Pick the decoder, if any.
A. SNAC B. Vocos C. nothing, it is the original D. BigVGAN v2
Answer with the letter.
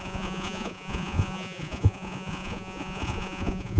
B